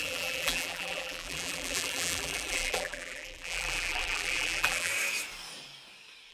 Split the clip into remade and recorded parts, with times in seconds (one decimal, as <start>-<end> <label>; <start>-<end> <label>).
0.0-4.9 remade; 4.9-6.3 recorded